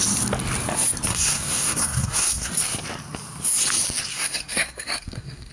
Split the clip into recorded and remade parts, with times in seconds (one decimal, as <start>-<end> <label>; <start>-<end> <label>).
0.0-1.1 recorded; 1.1-2.5 remade; 2.5-4.1 recorded; 4.1-5.5 remade